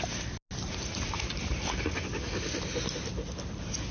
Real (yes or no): yes